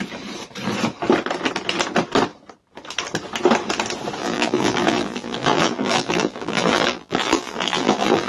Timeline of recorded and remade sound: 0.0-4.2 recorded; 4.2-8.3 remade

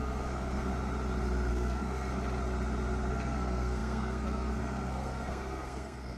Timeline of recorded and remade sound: 0.0-0.7 remade; 0.7-1.5 recorded; 1.5-2.1 remade; 2.1-3.1 recorded; 3.1-6.2 remade

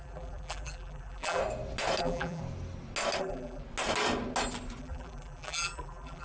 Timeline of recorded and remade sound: 0.0-1.4 remade; 1.4-2.0 recorded; 2.0-2.4 remade; 2.4-3.2 recorded; 3.2-3.6 remade; 3.6-4.8 recorded; 4.8-6.2 remade